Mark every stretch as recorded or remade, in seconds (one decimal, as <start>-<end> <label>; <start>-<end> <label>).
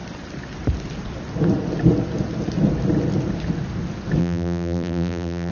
0.0-4.2 recorded; 4.2-5.5 remade